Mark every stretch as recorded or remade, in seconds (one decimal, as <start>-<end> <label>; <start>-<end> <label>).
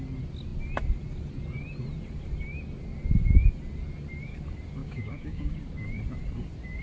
0.0-4.8 recorded; 4.8-5.5 remade; 5.5-6.8 recorded